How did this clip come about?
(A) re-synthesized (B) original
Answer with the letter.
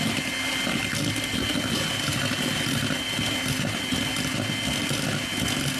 B